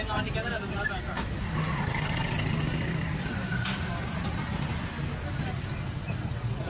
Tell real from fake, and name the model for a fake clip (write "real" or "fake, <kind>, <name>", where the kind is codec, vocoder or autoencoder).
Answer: real